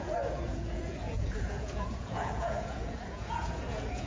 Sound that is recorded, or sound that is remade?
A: remade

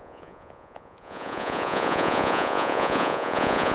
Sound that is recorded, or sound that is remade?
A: remade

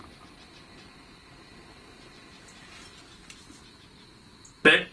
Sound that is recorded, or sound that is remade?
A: recorded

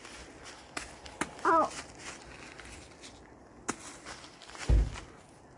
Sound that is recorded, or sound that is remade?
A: recorded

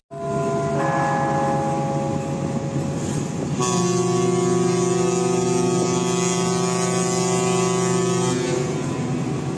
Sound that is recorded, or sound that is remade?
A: recorded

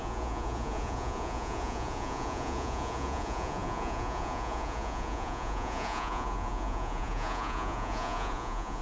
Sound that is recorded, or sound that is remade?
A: remade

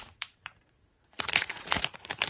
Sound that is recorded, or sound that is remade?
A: remade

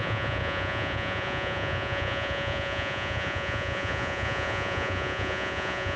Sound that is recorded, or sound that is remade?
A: remade